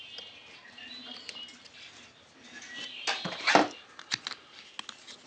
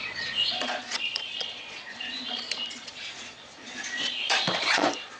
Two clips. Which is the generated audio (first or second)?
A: second